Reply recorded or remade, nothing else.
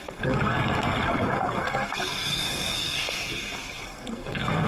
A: remade